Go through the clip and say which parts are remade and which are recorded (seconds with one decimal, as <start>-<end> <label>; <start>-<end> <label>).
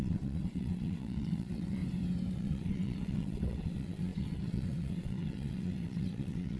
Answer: 0.0-1.8 remade; 1.8-2.3 recorded; 2.3-6.6 remade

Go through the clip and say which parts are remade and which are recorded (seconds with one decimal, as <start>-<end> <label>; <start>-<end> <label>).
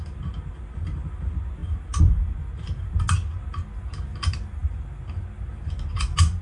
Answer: 0.0-6.4 recorded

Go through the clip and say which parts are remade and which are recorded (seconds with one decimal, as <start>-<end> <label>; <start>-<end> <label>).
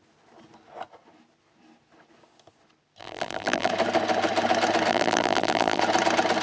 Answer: 0.0-3.0 recorded; 3.0-3.7 remade; 3.7-4.9 recorded; 4.9-5.8 remade; 5.8-6.4 recorded